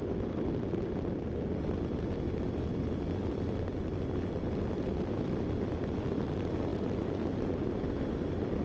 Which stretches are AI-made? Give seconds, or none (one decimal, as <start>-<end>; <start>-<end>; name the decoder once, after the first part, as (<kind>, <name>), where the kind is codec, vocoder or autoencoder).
none